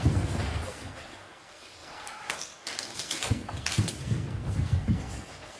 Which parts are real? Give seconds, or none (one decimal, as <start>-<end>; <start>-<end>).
none